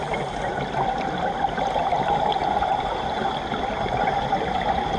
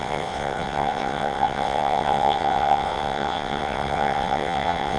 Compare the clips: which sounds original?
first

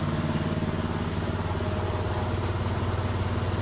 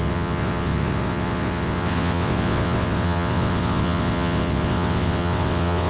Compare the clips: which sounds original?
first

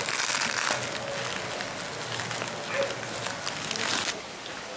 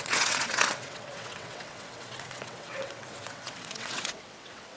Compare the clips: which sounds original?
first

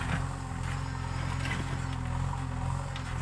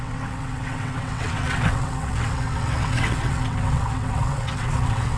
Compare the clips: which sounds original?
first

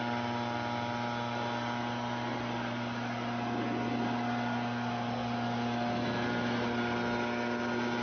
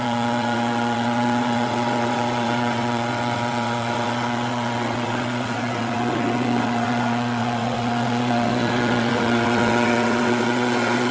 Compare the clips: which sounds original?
first